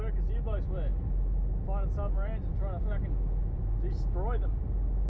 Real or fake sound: real